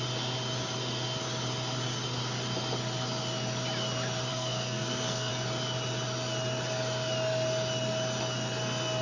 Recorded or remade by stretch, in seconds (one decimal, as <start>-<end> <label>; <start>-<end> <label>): 0.0-4.3 recorded; 4.3-5.3 remade; 5.3-9.0 recorded